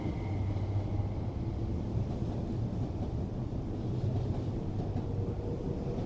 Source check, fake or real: real